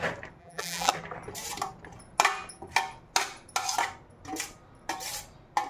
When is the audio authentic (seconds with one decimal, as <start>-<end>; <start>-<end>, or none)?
0.0-0.4; 0.9-5.7